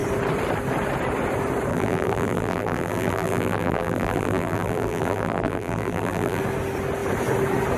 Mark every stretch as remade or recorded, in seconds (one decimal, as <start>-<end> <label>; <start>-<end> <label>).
0.0-1.7 recorded; 1.7-6.4 remade; 6.4-7.8 recorded